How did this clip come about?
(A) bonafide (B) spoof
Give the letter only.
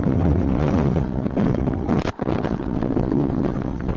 B